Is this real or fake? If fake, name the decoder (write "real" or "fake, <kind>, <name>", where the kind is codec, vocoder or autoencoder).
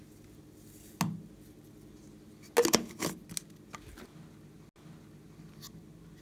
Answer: real